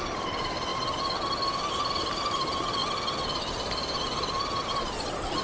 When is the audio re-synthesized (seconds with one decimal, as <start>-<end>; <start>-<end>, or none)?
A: 0.0-0.7; 2.2-2.8; 4.6-5.4